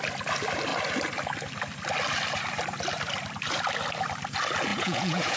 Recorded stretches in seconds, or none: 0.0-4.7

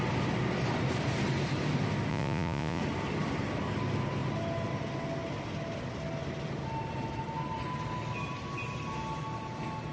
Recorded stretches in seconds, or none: 0.0-2.1; 2.8-9.9

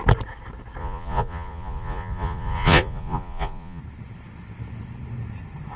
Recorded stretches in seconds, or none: 0.0-0.8; 3.8-5.8

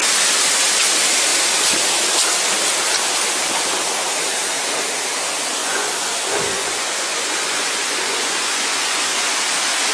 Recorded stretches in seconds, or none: 0.0-5.6; 9.4-9.9

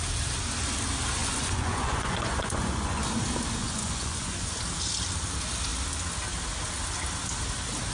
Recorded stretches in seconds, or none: 0.0-1.2; 3.0-3.6; 4.5-7.9